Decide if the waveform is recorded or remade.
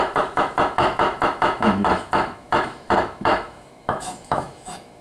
remade